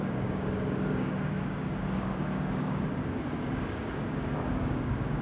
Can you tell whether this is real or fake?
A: fake